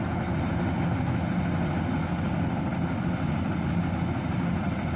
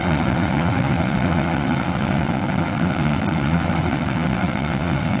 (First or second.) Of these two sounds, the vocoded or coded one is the second